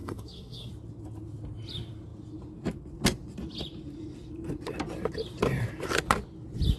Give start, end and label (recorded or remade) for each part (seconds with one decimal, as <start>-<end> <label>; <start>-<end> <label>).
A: 0.0-0.7 remade; 0.7-6.8 recorded